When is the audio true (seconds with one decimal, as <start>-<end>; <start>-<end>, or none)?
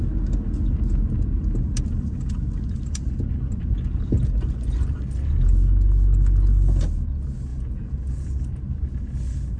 0.0-7.5; 8.6-9.6